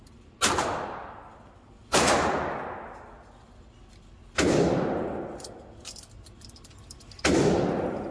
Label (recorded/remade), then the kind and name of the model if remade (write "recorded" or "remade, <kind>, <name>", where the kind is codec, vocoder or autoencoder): recorded